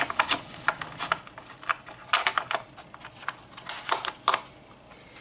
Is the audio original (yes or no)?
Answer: yes